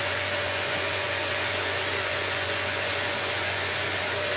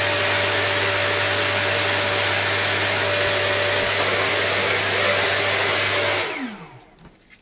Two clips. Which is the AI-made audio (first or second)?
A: first